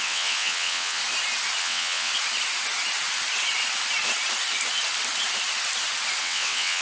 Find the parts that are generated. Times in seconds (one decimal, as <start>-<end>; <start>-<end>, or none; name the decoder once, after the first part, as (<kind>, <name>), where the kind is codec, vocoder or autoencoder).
0.0-1.0 (vocoder, WaveNeXt); 1.6-2.1; 6.2-6.8